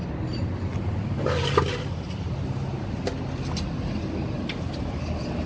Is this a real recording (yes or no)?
yes